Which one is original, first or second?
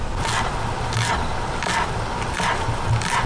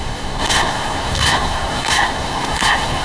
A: first